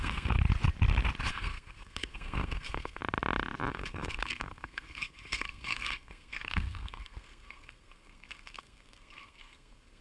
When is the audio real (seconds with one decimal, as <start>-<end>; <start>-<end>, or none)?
0.4-1.3; 3.0-3.7